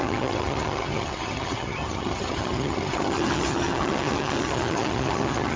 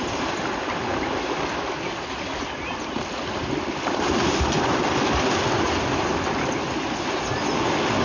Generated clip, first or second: first